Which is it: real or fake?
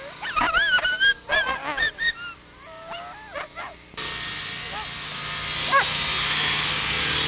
real